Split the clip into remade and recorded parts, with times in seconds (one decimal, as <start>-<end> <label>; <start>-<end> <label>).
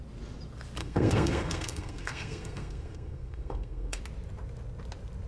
0.0-0.8 recorded; 0.8-4.0 remade; 4.0-5.3 recorded